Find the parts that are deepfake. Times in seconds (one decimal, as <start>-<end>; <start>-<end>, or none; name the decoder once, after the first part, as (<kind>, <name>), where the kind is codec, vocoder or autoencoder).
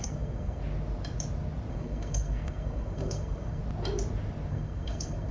0.0-0.6 (codec, SNAC); 1.7-3.6; 4.5-5.3